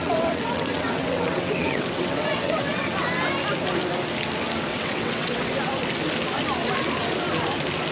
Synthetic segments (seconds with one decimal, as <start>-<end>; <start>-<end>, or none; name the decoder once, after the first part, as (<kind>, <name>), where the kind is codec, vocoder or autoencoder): 0.0-3.0 (vocoder, WaveNeXt); 4.7-5.5